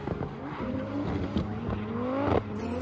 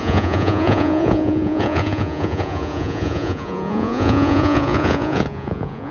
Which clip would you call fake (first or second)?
second